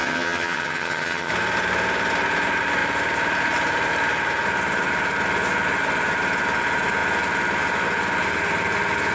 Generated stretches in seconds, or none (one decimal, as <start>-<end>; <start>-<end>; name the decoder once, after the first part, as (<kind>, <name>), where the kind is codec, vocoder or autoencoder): 0.0-1.3 (vocoder, HiFi-GAN)